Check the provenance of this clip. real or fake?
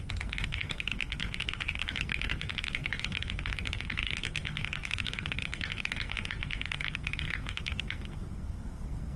fake